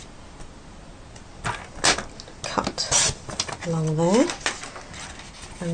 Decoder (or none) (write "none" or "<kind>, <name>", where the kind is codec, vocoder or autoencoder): none